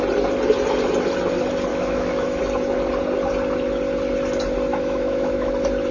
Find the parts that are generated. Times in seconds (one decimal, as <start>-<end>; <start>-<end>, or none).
1.7-2.4; 4.7-5.5